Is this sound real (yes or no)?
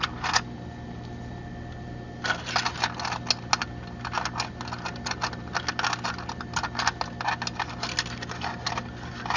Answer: yes